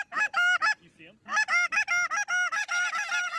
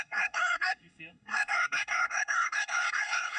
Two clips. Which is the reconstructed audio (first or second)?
second